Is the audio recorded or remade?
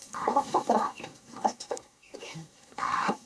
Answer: remade